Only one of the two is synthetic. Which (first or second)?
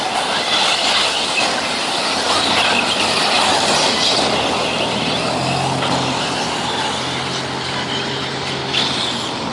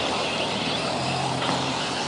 second